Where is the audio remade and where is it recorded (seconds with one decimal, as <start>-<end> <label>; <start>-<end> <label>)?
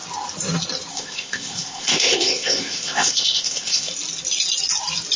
0.0-0.9 recorded; 0.9-3.9 remade; 3.9-5.2 recorded